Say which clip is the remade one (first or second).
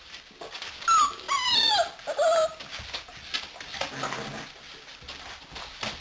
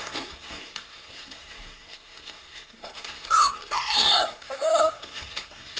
second